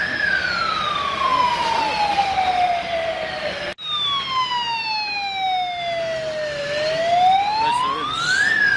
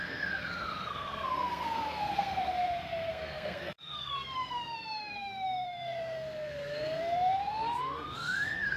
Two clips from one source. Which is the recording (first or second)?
first